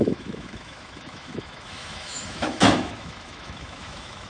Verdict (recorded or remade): remade